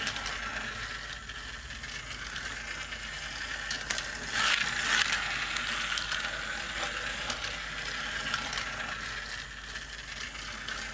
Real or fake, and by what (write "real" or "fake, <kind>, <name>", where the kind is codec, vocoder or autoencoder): real